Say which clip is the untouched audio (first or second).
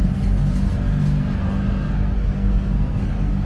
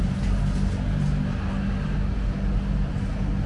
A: second